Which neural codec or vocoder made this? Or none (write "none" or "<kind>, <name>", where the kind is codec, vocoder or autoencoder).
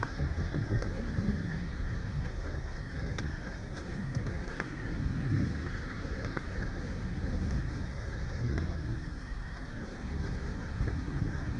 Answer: codec, SNAC